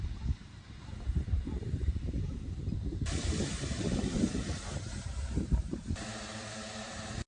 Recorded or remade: remade